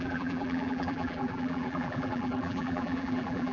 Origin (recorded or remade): remade